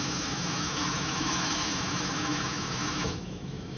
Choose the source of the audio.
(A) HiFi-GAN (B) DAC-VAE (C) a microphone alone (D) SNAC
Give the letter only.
B